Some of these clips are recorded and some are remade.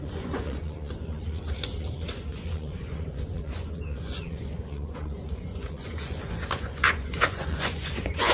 remade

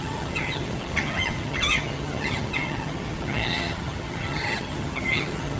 remade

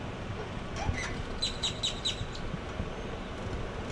recorded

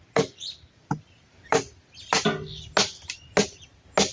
recorded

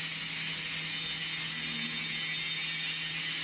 recorded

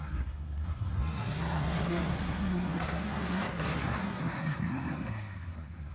remade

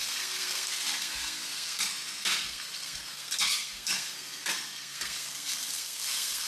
remade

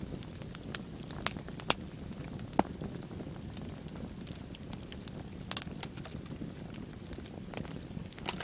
recorded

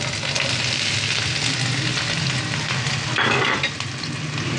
recorded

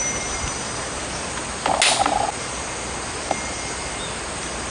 recorded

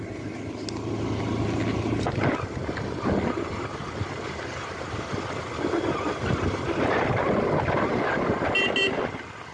recorded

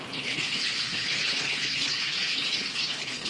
remade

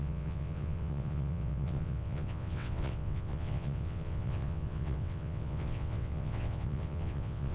remade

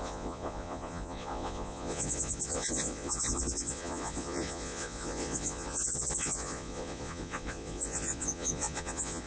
remade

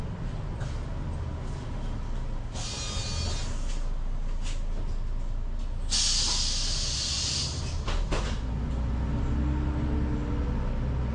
recorded